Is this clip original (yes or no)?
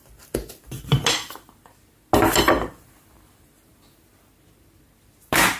yes